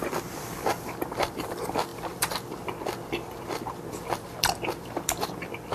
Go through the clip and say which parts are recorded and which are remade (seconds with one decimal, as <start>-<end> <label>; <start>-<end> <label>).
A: 0.0-5.7 remade

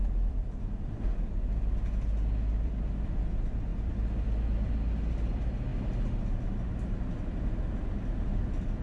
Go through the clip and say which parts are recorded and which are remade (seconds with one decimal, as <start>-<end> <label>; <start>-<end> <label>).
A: 0.0-3.3 remade; 3.3-3.7 recorded; 3.7-4.7 remade; 4.7-8.8 recorded

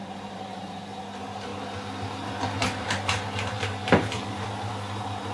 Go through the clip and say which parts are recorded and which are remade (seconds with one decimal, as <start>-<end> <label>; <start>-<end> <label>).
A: 0.0-1.0 remade; 1.0-5.3 recorded

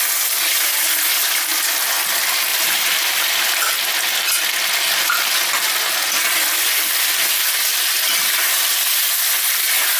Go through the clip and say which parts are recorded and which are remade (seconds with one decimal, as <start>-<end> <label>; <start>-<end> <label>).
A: 0.0-2.5 recorded; 2.5-3.5 remade; 3.5-10.0 recorded

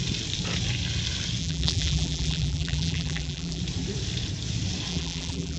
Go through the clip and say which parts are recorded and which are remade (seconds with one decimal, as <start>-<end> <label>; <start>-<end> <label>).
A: 0.0-1.4 recorded; 1.4-3.6 remade; 3.6-4.9 recorded; 4.9-5.6 remade

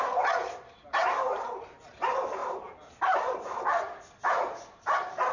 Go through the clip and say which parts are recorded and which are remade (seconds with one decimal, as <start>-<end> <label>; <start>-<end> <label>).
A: 0.0-5.3 recorded

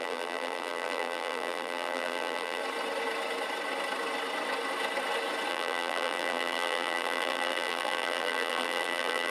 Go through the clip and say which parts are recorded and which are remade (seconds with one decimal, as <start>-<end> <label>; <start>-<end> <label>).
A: 0.0-2.6 remade; 2.6-5.5 recorded; 5.5-9.3 remade

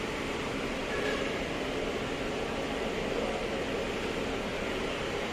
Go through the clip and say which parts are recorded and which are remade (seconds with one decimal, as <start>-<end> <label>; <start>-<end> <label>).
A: 0.0-0.8 recorded; 0.8-2.4 remade; 2.4-4.5 recorded; 4.5-5.3 remade